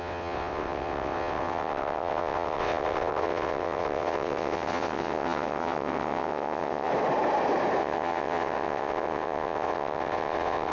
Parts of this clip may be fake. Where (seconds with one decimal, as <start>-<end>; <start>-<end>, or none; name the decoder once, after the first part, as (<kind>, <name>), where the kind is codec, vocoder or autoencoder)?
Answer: 0.0-6.9 (vocoder, WaveNeXt); 7.8-10.7